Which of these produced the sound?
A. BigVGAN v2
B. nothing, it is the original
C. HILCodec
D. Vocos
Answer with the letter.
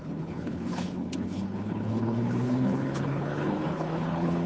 C